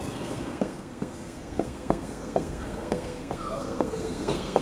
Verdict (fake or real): fake